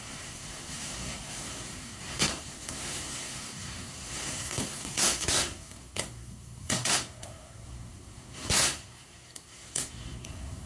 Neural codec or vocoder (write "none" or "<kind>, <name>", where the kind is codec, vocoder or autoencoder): codec, SNAC